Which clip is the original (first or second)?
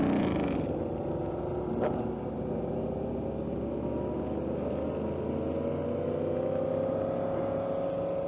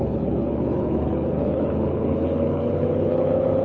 first